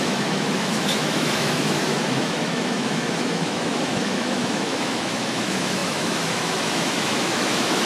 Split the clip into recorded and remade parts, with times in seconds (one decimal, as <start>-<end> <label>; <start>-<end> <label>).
0.0-7.9 remade